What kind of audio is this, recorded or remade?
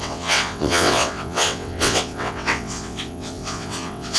remade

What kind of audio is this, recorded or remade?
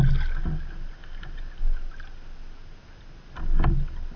recorded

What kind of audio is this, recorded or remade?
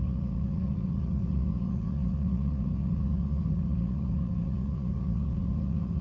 remade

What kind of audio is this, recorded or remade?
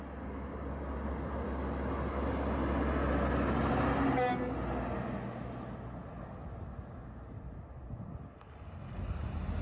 recorded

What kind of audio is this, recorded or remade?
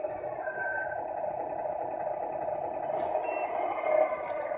recorded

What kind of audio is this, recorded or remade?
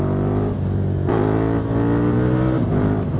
recorded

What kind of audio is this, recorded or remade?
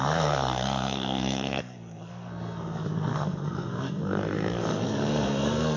remade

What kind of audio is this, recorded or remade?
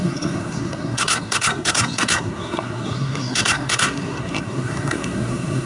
remade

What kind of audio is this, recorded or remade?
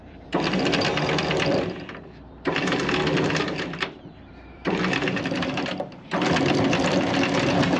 remade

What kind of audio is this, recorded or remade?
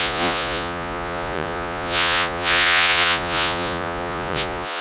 remade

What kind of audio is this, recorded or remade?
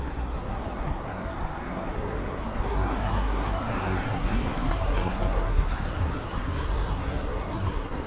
remade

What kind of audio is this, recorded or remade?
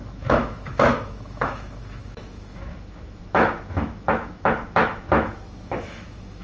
remade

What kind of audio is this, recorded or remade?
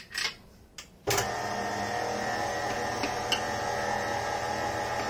recorded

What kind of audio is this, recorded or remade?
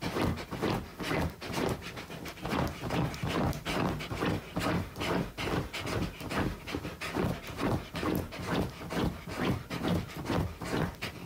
remade